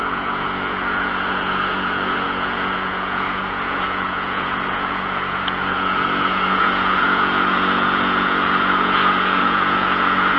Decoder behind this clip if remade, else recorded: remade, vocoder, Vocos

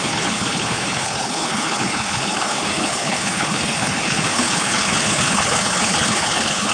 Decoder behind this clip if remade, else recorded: remade, codec, HILCodec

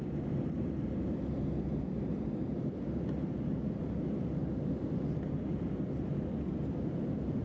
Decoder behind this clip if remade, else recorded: recorded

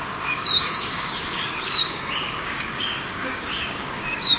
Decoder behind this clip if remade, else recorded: remade, codec, DAC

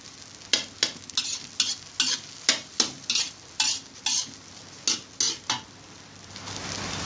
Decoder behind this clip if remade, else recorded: recorded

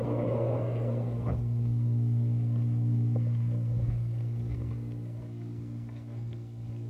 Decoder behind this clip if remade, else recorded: remade, codec, SNAC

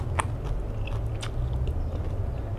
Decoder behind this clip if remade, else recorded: recorded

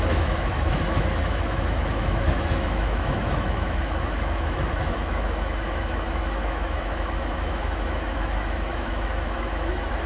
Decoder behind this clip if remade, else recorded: remade, autoencoder, DAC-VAE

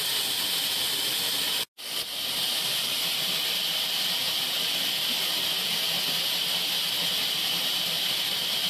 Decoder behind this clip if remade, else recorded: recorded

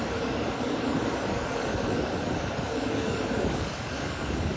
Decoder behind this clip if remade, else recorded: remade, codec, DAC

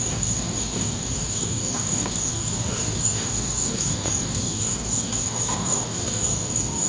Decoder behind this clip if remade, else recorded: remade, codec, DAC